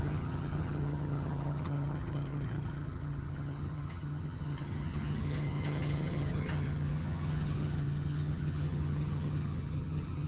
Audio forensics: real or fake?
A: fake